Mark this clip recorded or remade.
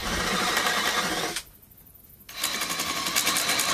recorded